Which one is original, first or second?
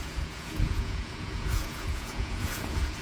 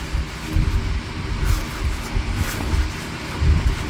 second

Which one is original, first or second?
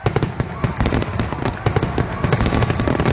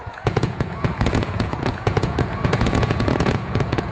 first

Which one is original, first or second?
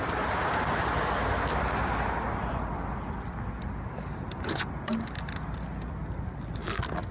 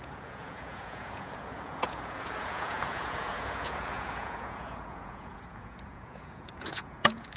first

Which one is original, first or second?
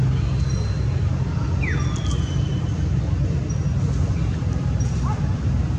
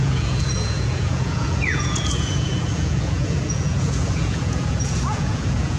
first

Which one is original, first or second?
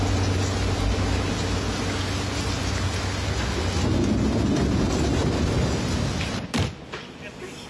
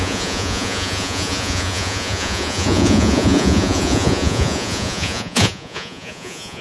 first